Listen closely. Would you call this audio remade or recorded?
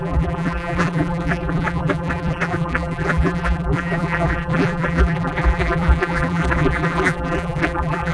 remade